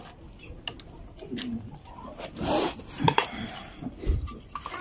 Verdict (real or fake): real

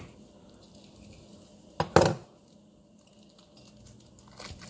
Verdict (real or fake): real